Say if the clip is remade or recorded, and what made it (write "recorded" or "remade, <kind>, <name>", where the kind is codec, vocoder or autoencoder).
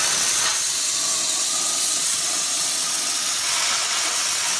remade, vocoder, WaveNeXt